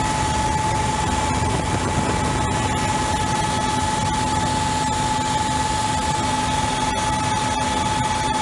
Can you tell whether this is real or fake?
real